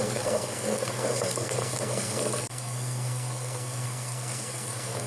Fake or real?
fake